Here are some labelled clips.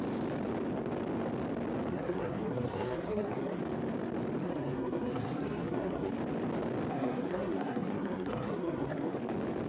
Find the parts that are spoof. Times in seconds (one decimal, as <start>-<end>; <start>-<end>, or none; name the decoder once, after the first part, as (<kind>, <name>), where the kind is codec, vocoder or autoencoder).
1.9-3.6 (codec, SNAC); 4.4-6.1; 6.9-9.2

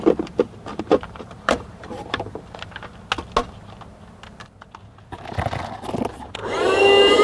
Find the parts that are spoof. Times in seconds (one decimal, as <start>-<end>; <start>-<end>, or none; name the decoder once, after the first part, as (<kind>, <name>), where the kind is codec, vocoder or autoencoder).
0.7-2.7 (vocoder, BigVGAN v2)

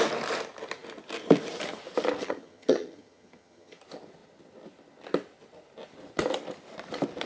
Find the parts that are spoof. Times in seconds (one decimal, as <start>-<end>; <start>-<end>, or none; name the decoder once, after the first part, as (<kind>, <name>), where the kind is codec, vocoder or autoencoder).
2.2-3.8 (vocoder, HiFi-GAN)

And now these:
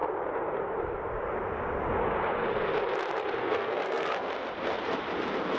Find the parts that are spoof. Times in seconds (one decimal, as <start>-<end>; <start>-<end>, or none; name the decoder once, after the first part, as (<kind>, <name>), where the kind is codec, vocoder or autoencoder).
3.4-4.3 (codec, SNAC)

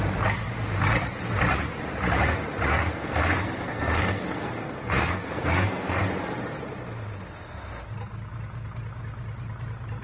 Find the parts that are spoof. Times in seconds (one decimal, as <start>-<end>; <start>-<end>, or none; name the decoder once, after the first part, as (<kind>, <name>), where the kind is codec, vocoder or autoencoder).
2.7-6.0 (codec, SNAC)

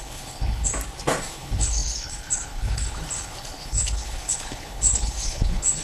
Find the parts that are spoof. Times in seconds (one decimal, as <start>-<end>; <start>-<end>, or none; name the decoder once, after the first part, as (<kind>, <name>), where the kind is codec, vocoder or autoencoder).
0.0-0.7 (codec, HILCodec); 1.3-5.8

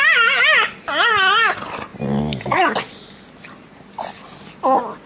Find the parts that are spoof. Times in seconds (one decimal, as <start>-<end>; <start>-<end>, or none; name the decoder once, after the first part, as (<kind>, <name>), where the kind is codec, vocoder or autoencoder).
none